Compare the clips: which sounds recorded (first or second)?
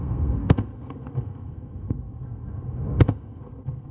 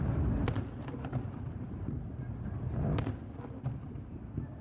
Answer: second